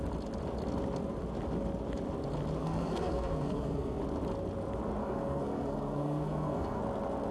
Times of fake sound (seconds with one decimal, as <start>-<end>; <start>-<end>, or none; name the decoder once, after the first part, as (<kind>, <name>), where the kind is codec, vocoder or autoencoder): 2.6-4.0 (codec, SNAC); 5.0-6.8